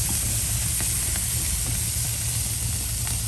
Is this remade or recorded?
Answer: recorded